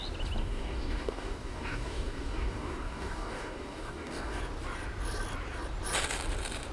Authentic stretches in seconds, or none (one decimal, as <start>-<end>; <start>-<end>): 0.0-0.4; 4.4-6.7